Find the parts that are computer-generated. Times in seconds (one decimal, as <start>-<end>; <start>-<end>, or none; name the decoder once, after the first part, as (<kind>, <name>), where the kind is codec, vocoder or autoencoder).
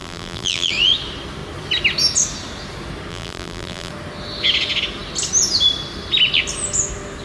0.0-0.7 (vocoder, BigVGAN v2); 3.1-3.9